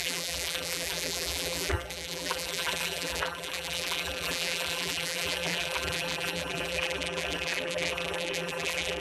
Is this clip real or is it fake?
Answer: fake